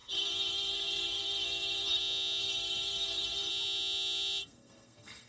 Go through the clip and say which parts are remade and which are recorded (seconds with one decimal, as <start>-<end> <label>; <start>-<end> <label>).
0.0-2.0 remade; 2.0-2.4 recorded; 2.4-3.5 remade; 3.5-4.4 recorded; 4.4-5.3 remade